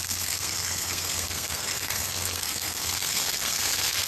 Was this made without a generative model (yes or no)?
no